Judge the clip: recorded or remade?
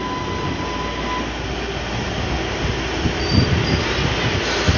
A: recorded